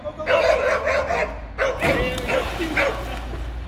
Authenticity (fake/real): real